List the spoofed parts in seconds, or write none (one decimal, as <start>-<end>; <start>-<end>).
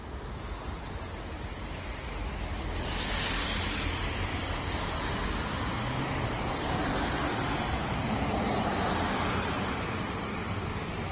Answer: none